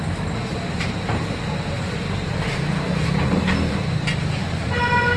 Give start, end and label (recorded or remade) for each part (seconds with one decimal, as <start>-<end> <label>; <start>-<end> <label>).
0.0-0.4 recorded; 0.4-3.5 remade; 3.5-4.4 recorded; 4.4-5.2 remade